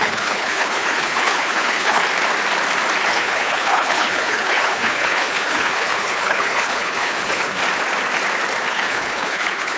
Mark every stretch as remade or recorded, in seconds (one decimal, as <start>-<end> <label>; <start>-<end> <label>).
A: 0.0-2.0 remade; 2.0-3.1 recorded; 3.1-7.6 remade; 7.6-8.7 recorded; 8.7-9.8 remade

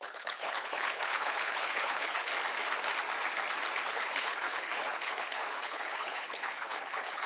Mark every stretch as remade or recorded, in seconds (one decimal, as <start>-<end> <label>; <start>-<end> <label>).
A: 0.0-2.3 remade; 2.3-3.9 recorded; 3.9-7.3 remade

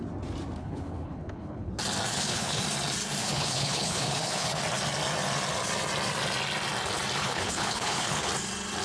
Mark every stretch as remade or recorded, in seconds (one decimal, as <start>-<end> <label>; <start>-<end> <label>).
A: 0.0-0.6 recorded; 0.6-1.7 remade; 1.7-2.1 recorded; 2.1-2.6 remade; 2.6-3.2 recorded; 3.2-4.6 remade; 4.6-7.2 recorded; 7.2-8.3 remade; 8.3-8.8 recorded

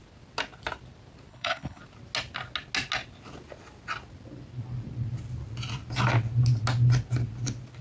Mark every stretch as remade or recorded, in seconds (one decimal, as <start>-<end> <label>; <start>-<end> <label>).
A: 0.0-1.3 recorded; 1.3-1.8 remade; 1.8-7.8 recorded

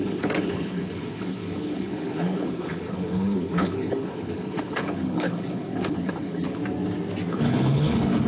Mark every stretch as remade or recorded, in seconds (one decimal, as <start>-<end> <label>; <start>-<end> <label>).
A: 0.0-6.6 remade; 6.6-7.3 recorded; 7.3-8.3 remade

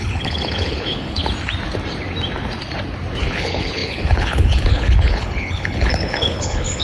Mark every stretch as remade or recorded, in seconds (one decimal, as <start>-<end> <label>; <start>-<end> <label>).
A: 0.0-1.2 remade; 1.2-3.2 recorded; 3.2-6.8 remade

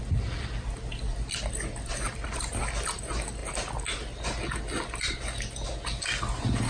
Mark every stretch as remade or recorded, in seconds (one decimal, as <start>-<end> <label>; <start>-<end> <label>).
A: 0.0-6.7 recorded